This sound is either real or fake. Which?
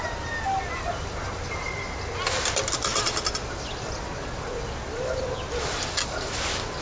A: real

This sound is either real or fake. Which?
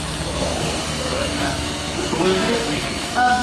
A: fake